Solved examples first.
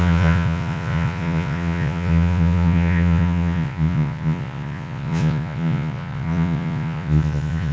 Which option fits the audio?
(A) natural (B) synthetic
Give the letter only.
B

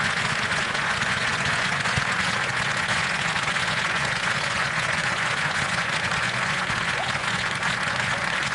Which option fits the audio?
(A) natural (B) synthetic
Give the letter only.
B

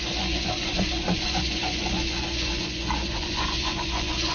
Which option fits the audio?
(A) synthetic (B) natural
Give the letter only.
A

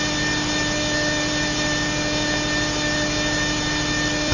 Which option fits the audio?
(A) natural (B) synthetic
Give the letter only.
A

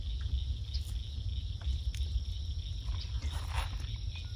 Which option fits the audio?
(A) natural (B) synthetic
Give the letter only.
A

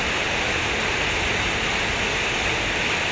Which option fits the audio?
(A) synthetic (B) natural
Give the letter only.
B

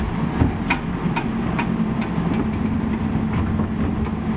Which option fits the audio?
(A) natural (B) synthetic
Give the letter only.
A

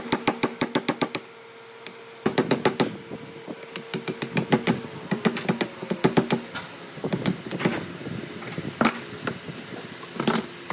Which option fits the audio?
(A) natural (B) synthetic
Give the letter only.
A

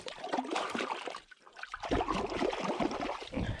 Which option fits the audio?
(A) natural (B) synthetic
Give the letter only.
A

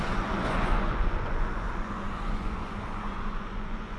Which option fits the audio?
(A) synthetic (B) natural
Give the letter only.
A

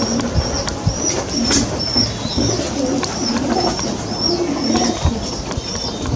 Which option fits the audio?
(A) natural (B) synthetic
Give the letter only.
A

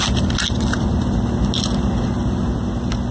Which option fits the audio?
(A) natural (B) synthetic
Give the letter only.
A